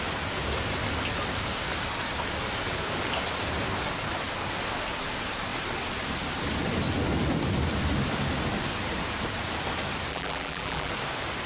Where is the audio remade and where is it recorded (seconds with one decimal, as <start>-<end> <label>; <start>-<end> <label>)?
0.0-10.1 recorded; 10.1-10.9 remade; 10.9-11.5 recorded